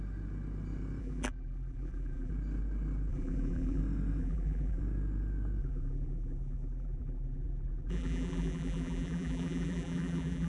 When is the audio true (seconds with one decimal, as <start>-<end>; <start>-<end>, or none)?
0.0-1.0; 2.3-3.1; 3.8-4.2; 4.8-5.6